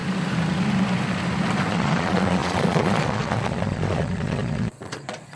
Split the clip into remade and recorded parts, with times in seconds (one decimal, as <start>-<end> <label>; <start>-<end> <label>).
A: 0.0-1.7 recorded; 1.7-5.4 remade